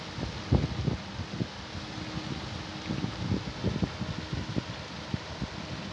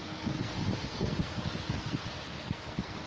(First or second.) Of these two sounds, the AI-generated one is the second